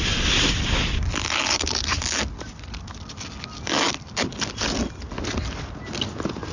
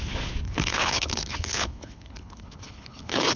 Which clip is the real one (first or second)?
first